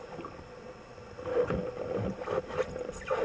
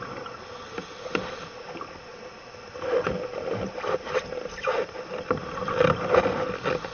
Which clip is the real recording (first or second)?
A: first